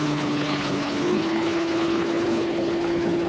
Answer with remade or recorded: remade